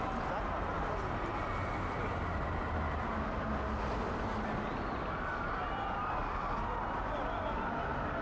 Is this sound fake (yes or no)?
no